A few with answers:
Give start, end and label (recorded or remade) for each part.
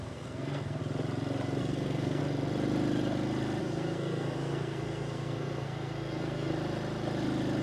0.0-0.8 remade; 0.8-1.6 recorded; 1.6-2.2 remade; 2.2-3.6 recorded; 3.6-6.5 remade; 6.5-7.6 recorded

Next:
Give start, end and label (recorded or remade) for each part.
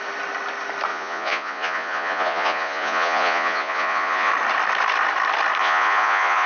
0.0-0.9 recorded; 0.9-4.3 remade; 4.3-5.6 recorded; 5.6-6.5 remade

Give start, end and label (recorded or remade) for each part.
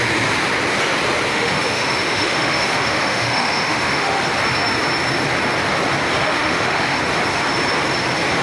0.0-1.3 recorded; 1.3-4.2 remade; 4.2-6.2 recorded; 6.2-7.0 remade; 7.0-8.4 recorded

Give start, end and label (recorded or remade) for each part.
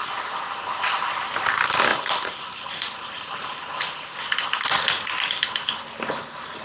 0.0-1.9 recorded; 1.9-4.2 remade; 4.2-6.6 recorded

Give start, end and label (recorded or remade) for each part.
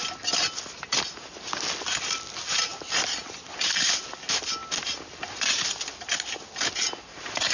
0.0-7.5 recorded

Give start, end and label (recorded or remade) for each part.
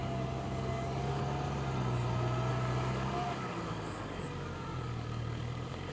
0.0-1.2 remade; 1.2-2.5 recorded; 2.5-5.9 remade